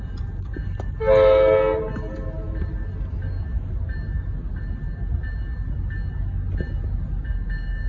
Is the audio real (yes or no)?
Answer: yes